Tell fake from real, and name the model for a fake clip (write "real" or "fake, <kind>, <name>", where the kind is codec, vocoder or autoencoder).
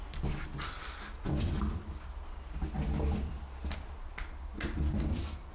real